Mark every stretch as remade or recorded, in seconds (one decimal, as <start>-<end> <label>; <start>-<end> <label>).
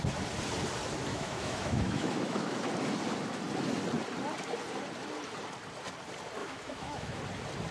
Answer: 0.0-1.1 recorded; 1.1-2.6 remade; 2.6-6.4 recorded; 6.4-7.2 remade; 7.2-7.7 recorded